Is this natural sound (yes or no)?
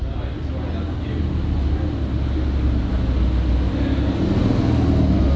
yes